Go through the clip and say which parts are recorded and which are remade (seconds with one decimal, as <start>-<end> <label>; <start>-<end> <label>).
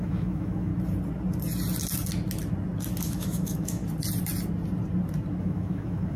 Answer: 0.0-0.7 remade; 0.7-3.0 recorded; 3.0-3.8 remade; 3.8-5.4 recorded; 5.4-6.2 remade